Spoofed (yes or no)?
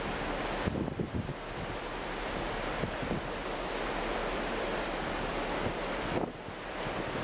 no